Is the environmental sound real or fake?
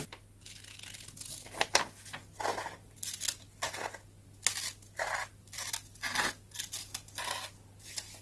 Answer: real